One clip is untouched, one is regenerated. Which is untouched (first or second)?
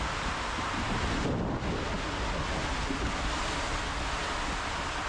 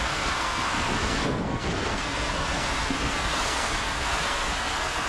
first